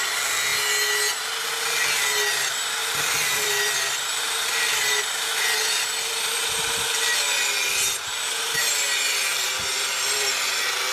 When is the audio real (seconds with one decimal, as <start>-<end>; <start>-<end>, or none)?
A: 0.0-2.8; 7.2-9.3; 10.3-10.9